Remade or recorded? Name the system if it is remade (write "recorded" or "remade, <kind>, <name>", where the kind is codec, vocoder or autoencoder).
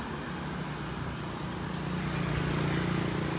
recorded